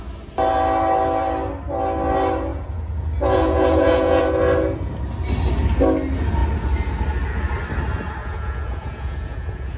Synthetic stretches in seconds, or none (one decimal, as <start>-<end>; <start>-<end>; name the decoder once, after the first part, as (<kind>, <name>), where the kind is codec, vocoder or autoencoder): 2.5-4.2 (vocoder, Vocos); 8.2-9.8